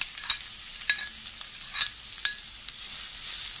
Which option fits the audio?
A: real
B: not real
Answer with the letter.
A